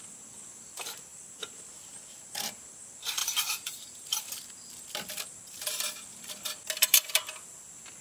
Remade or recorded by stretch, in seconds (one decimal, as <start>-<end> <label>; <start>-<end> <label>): 0.0-1.1 recorded; 1.1-1.6 remade; 1.6-3.2 recorded; 3.2-4.2 remade; 4.2-8.0 recorded